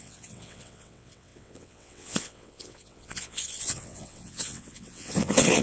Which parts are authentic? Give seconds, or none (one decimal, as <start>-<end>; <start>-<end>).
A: none